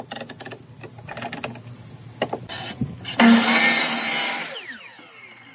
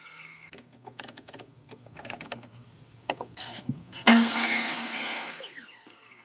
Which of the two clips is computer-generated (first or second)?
second